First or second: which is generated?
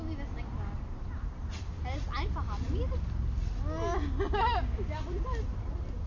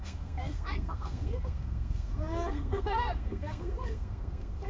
second